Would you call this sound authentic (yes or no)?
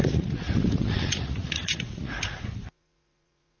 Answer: no